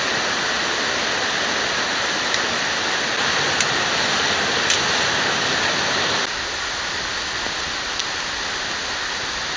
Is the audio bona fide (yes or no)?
yes